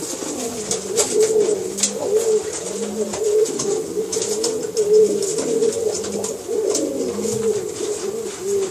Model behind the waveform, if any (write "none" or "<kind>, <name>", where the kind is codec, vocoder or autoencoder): none